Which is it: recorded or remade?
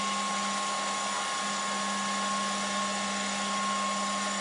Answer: recorded